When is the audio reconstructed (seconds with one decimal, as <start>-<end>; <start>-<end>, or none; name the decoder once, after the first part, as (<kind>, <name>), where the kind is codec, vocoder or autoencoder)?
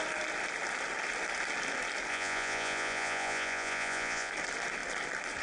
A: 2.1-4.3 (vocoder, Vocos)